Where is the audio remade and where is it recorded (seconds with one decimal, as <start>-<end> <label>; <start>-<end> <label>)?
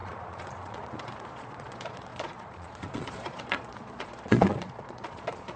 0.0-5.6 remade